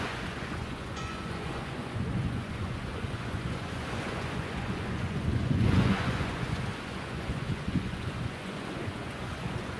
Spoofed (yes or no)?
yes